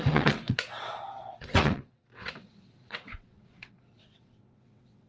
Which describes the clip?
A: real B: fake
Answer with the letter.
B